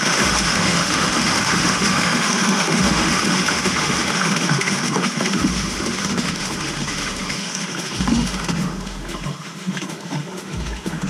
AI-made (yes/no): yes